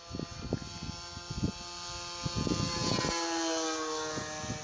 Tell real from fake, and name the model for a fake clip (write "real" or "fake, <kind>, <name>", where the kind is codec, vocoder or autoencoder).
real